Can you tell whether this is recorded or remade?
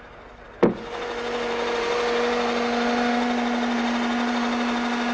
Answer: recorded